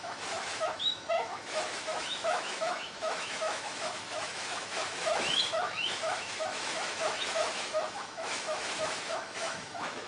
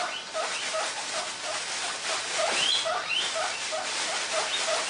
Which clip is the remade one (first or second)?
first